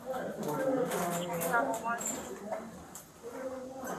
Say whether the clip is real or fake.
real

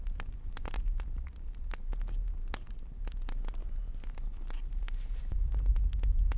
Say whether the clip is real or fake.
real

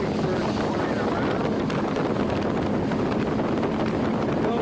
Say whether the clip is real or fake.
real